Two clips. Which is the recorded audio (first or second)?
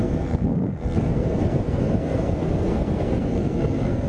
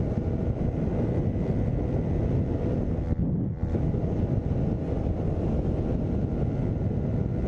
second